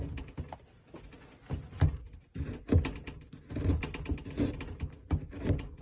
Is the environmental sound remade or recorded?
recorded